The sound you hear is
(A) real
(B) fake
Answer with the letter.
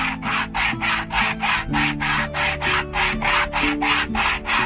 A